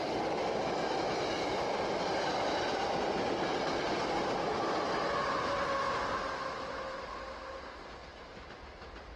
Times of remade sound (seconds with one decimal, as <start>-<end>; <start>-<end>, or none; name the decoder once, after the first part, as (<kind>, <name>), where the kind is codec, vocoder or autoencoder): none